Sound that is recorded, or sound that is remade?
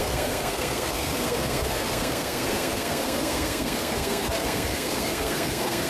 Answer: remade